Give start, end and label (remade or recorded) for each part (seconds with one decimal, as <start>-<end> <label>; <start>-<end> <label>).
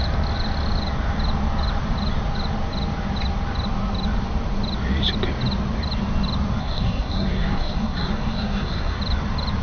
0.0-6.6 recorded; 6.6-9.0 remade; 9.0-9.6 recorded